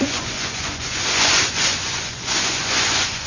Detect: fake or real fake